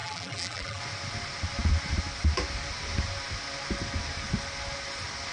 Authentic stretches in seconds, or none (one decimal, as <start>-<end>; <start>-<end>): 0.8-5.3